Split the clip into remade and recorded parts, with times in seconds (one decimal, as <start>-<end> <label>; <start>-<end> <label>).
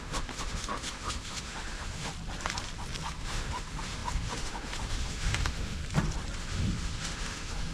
0.0-2.1 remade; 2.1-3.1 recorded; 3.1-5.8 remade; 5.8-6.4 recorded; 6.4-7.7 remade